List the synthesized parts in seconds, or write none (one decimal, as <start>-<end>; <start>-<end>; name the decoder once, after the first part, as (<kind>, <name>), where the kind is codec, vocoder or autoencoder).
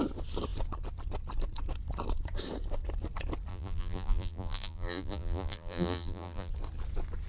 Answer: 3.5-6.5 (vocoder, BigVGAN v2)